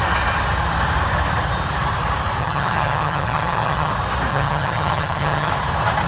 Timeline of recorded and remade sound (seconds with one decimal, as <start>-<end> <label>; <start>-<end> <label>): 0.0-2.4 recorded; 2.4-3.9 remade; 3.9-4.3 recorded; 4.3-5.5 remade; 5.5-6.1 recorded